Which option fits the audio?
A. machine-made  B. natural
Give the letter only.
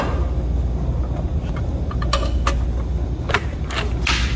B